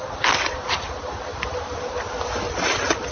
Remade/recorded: recorded